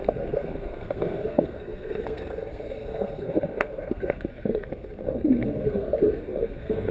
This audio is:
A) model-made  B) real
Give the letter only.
A